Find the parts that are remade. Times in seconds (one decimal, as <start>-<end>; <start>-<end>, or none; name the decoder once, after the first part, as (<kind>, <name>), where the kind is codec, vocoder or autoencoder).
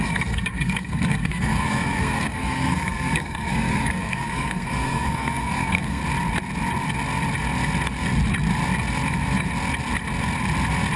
0.0-6.0 (codec, SNAC)